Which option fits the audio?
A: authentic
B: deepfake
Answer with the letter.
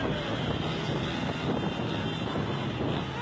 A